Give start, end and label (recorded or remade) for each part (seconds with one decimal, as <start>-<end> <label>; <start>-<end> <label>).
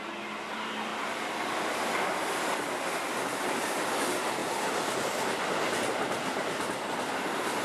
0.0-7.6 recorded